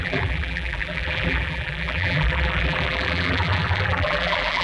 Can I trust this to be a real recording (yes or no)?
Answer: no